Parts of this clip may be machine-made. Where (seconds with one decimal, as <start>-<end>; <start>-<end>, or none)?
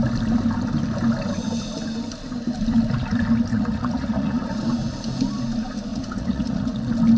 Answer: 3.5-4.6; 5.9-6.8